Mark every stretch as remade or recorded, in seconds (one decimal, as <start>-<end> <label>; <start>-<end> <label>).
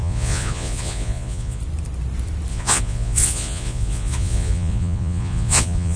0.0-1.6 remade; 1.6-2.5 recorded; 2.5-6.0 remade